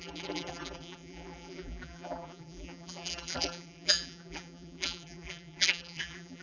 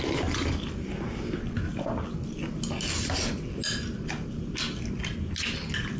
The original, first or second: second